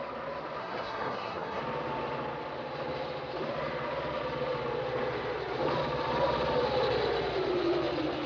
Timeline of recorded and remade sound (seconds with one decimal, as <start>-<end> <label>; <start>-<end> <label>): 0.0-0.6 recorded; 0.6-1.6 remade; 1.6-8.3 recorded